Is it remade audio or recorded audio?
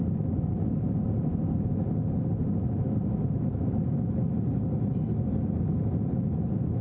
recorded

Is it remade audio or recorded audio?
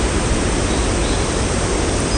recorded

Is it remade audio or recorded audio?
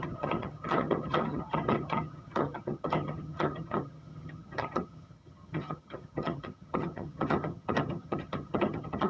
remade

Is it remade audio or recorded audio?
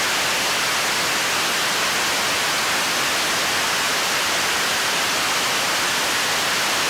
recorded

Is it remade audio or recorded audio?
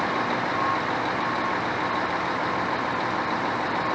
recorded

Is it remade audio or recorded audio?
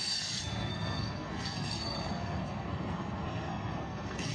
remade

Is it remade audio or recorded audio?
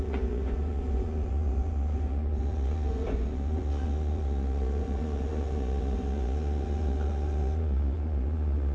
remade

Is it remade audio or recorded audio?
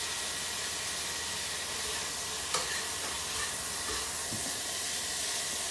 recorded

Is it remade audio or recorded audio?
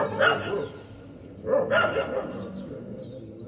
recorded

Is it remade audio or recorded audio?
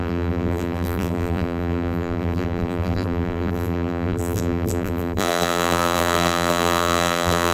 remade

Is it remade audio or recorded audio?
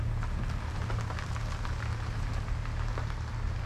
recorded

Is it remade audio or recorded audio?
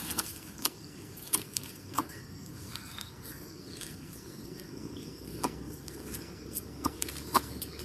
remade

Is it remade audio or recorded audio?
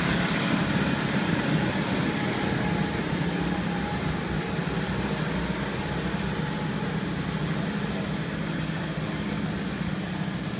recorded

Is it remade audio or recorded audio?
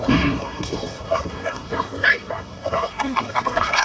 remade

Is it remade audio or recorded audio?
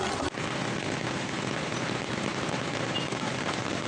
recorded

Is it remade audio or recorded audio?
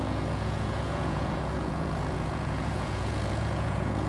remade